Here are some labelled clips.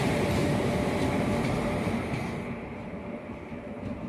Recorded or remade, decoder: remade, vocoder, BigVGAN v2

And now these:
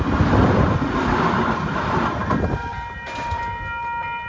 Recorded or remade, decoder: recorded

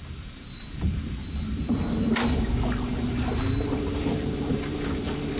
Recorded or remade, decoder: remade, vocoder, BigVGAN v2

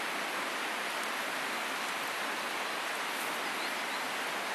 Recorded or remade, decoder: recorded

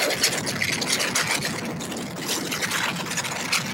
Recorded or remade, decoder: recorded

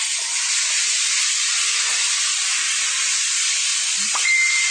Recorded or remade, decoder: remade, vocoder, BigVGAN v2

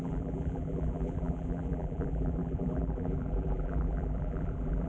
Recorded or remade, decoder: remade, vocoder, BigVGAN v2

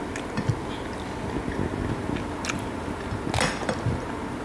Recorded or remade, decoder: recorded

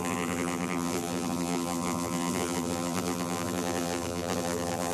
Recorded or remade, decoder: remade, vocoder, BigVGAN v2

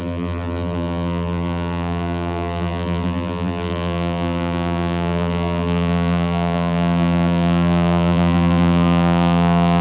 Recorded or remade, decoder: remade, vocoder, BigVGAN v2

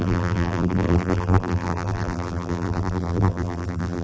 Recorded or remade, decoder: remade, vocoder, BigVGAN v2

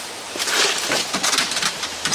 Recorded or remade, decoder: remade, vocoder, BigVGAN v2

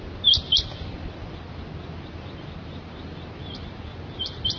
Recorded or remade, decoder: recorded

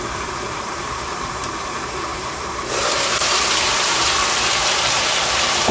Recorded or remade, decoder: remade, vocoder, BigVGAN v2